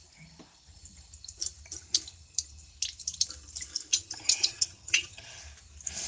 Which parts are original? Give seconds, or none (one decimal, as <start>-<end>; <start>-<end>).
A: 0.0-3.9; 5.4-6.1